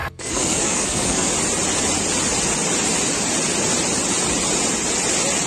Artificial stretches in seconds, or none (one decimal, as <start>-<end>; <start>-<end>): 0.0-1.3